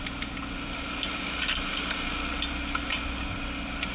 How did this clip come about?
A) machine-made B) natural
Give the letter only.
B